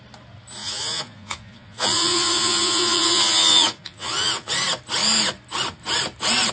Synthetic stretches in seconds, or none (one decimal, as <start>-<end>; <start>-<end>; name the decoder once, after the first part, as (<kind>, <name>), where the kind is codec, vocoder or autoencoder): 0.6-4.5 (vocoder, Vocos)